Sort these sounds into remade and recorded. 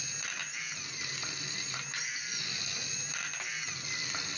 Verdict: recorded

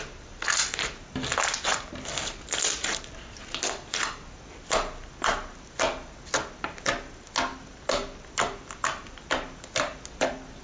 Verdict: recorded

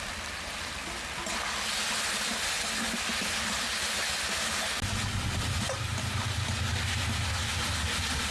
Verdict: recorded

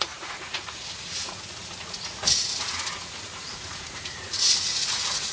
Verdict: remade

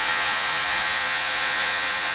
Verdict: remade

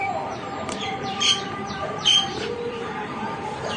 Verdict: remade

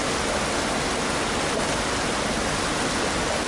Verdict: recorded